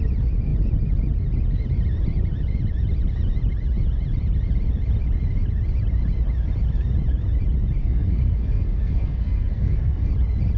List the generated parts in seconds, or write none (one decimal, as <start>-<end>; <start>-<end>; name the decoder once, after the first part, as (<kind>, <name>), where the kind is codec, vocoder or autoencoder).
7.8-10.1 (codec, SNAC)